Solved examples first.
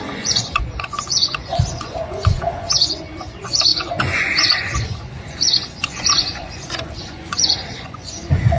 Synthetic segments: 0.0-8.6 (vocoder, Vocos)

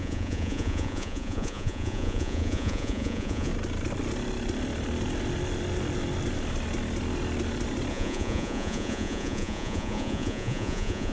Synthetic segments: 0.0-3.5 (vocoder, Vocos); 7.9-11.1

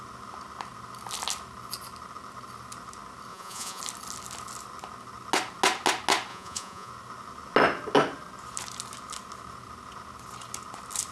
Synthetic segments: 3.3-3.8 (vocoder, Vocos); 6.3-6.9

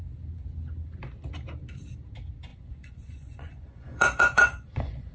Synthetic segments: 2.5-5.1 (vocoder, Vocos)

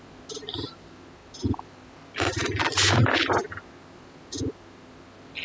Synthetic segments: none